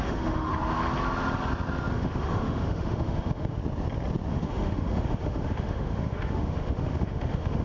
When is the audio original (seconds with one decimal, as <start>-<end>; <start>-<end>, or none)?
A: 0.5-1.9; 3.6-4.3